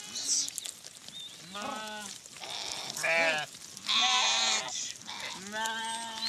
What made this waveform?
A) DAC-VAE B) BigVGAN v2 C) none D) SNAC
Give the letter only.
C